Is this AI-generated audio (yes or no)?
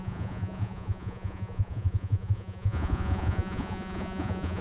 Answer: yes